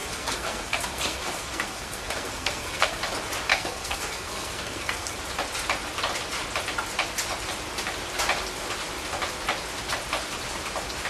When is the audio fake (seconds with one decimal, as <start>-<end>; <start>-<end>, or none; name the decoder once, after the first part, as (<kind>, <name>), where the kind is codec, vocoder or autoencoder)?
0.0-3.0 (codec, SNAC); 3.5-5.2

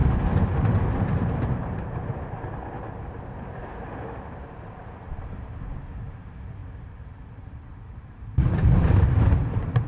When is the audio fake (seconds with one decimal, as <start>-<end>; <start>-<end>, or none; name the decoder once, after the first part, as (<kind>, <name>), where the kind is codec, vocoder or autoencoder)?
1.1-3.6 (vocoder, BigVGAN v2); 4.3-9.9

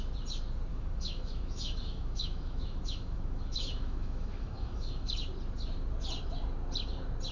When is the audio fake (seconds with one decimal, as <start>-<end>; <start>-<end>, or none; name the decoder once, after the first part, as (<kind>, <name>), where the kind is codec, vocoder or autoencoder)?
0.7-5.1 (autoencoder, DAC-VAE)

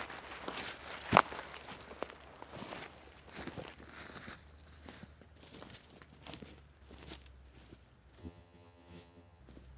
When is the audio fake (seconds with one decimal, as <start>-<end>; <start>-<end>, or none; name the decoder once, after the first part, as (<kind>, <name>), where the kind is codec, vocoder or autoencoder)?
8.2-9.4 (vocoder, HiFi-GAN)

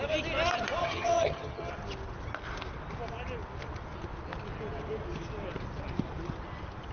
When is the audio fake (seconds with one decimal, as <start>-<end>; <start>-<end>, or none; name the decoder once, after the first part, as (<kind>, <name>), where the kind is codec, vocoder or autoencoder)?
0.8-1.7 (vocoder, HiFi-GAN)

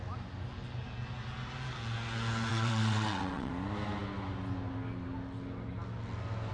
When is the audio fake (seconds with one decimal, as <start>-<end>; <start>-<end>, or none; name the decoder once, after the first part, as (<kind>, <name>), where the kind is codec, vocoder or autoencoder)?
2.5-3.5 (vocoder, WaveNeXt)